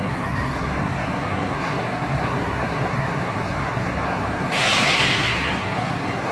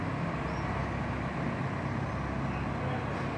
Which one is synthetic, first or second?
first